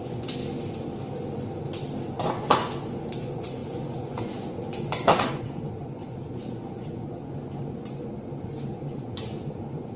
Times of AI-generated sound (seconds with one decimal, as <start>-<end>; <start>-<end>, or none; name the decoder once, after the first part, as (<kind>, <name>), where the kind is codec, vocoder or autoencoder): 0.0-0.4 (vocoder, Vocos); 2.3-10.0

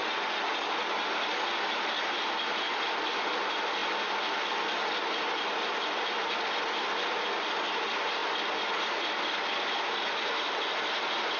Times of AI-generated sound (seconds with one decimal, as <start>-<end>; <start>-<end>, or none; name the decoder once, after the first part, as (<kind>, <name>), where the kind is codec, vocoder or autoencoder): none

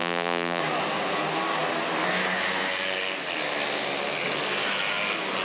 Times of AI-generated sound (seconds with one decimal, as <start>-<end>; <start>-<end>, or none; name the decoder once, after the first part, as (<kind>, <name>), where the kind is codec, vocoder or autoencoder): 0.0-0.6 (vocoder, BigVGAN v2)

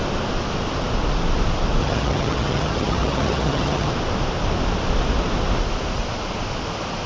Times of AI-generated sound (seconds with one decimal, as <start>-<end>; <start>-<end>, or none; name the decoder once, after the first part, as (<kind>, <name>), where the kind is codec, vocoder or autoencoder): 1.8-3.9 (vocoder, HiFi-GAN)

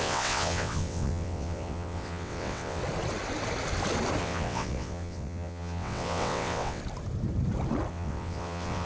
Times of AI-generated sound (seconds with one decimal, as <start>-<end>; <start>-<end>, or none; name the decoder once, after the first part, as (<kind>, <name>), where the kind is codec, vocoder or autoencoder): 0.0-2.8 (vocoder, WaveNeXt); 4.2-6.8; 7.9-8.9

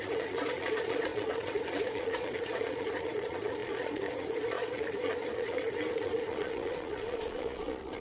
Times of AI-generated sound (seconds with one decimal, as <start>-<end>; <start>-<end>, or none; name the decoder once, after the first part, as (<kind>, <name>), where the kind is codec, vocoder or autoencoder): 0.0-8.0 (vocoder, Vocos)